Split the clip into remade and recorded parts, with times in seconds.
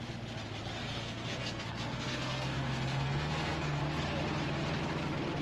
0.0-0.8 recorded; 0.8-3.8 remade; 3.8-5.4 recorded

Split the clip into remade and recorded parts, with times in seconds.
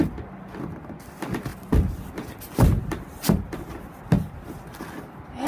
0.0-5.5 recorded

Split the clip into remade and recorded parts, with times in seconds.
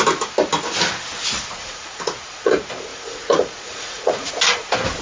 0.0-1.6 recorded; 1.6-2.5 remade; 2.5-2.9 recorded; 2.9-4.3 remade; 4.3-5.0 recorded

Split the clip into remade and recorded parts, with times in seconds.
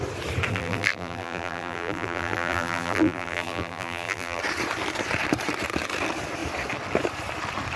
0.0-0.5 recorded; 0.5-4.4 remade; 4.4-7.8 recorded